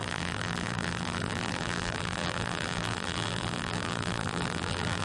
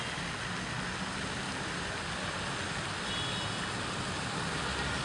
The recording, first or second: second